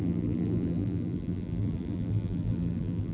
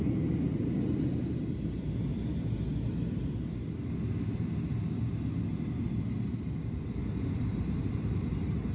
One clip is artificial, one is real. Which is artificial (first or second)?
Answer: first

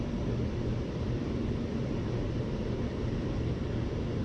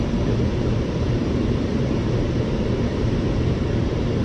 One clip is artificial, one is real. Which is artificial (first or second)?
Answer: second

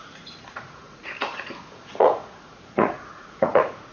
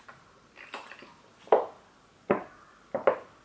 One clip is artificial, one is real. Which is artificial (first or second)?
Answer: first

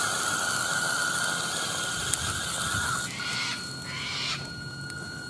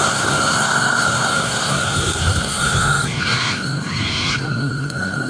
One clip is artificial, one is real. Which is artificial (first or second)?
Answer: second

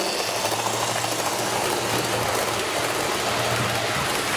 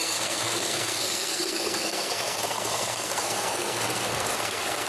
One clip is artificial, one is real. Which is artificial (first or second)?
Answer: second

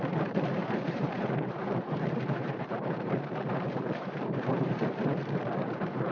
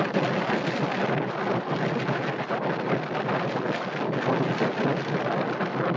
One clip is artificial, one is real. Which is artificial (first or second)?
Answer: first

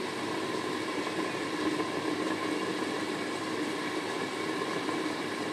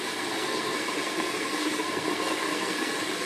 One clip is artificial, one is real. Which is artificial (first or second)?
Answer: second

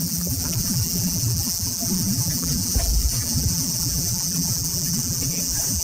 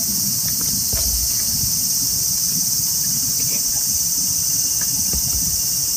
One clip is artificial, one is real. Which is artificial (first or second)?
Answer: first